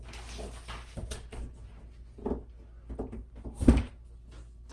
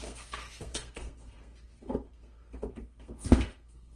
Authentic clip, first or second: first